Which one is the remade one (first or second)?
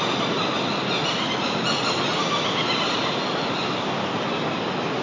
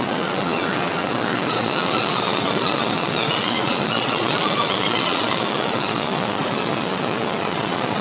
second